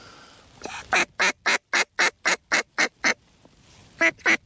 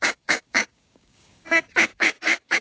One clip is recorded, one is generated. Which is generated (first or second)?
second